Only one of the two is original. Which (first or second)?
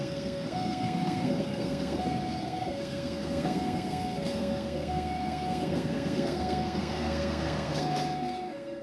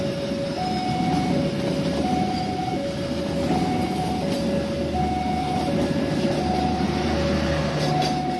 second